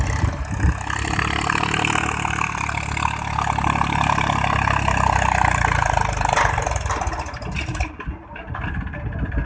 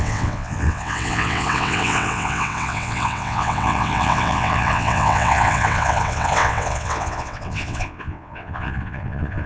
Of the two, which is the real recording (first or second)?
first